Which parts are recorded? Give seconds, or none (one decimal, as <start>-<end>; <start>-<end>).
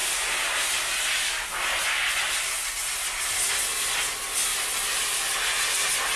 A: 0.0-6.2